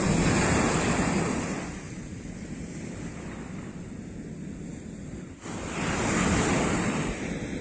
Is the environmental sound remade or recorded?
recorded